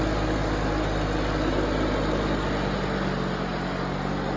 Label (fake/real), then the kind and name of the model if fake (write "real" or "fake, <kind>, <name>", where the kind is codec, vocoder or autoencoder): real